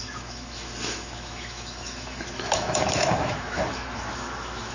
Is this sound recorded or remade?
remade